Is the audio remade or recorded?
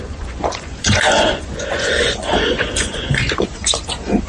remade